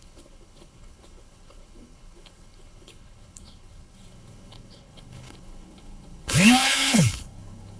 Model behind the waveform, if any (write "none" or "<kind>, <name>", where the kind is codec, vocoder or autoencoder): codec, HILCodec